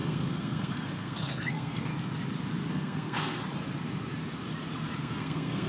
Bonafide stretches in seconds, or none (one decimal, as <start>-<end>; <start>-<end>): 1.9-2.7; 3.4-5.0